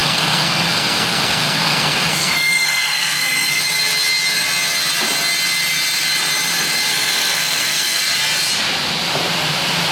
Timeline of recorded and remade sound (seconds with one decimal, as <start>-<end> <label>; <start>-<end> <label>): 0.0-3.6 remade; 3.6-6.9 recorded; 6.9-8.0 remade; 8.0-9.9 recorded